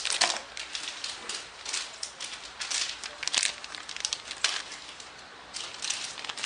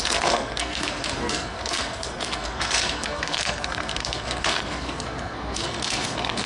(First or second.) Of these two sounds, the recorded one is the first